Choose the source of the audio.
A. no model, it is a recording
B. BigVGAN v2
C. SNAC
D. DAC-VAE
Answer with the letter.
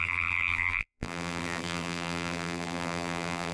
B